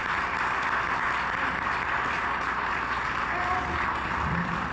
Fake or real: real